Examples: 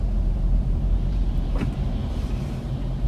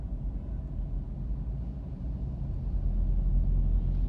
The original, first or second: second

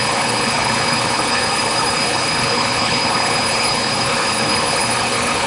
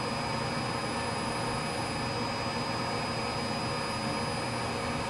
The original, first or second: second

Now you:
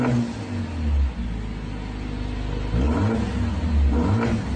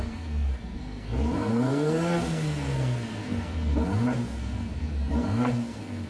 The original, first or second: first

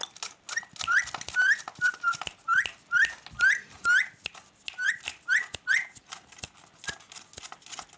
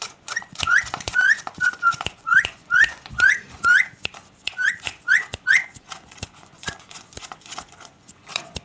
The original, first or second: first